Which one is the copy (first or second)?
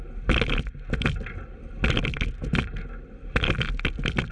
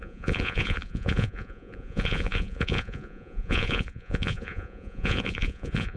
second